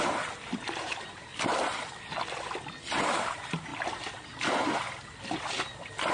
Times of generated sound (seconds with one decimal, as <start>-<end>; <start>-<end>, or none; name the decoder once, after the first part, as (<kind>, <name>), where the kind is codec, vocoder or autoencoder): 0.0-1.3 (vocoder, BigVGAN v2); 3.0-3.7